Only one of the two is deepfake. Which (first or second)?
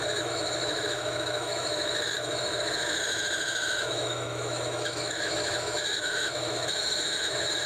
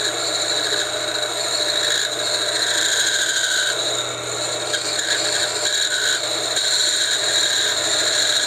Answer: first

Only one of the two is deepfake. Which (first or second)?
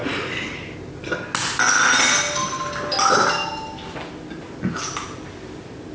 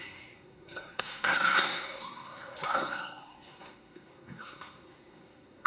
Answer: second